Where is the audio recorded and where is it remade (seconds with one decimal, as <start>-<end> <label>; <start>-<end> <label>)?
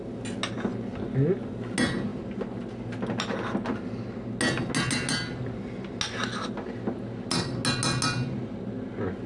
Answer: 0.0-9.3 recorded